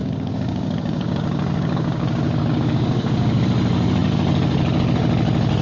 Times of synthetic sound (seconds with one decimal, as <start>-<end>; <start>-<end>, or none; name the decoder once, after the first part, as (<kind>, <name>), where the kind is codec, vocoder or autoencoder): 0.0-3.4 (codec, DAC)